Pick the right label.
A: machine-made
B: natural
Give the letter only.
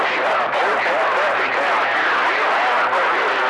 A